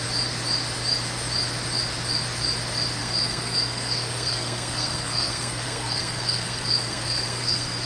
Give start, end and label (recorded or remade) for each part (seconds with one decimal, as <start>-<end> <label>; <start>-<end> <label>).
0.0-3.0 recorded; 3.0-7.9 remade